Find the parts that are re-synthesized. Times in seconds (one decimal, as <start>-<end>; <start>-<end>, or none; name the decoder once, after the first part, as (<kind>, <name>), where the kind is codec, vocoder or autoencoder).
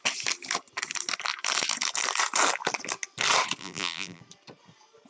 3.6-4.2 (vocoder, BigVGAN v2)